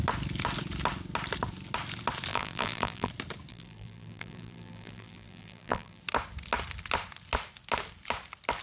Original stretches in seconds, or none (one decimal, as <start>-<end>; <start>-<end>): 0.0-2.3; 3.1-3.5; 6.0-8.6